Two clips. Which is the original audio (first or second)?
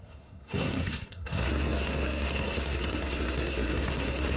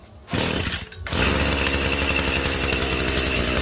second